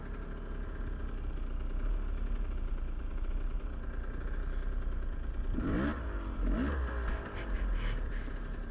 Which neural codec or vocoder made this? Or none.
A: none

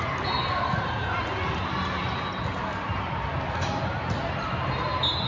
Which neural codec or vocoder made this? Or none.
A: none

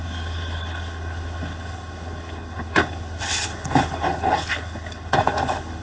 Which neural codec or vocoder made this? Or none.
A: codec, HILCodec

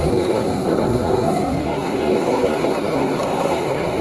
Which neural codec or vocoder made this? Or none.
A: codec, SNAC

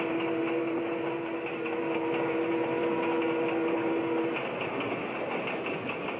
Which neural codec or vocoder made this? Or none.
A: none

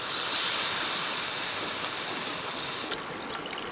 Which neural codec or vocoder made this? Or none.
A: none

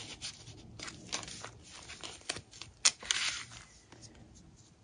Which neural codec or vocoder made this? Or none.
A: none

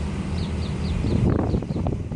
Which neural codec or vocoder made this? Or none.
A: vocoder, BigVGAN v2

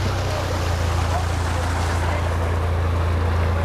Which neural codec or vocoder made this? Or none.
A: none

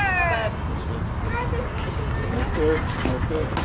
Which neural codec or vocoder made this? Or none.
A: none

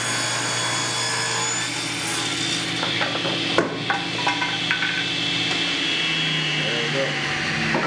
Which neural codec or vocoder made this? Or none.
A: none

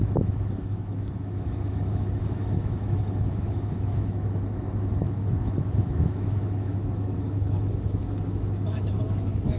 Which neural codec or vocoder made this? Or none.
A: autoencoder, DAC-VAE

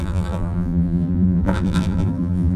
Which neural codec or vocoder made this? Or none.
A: vocoder, BigVGAN v2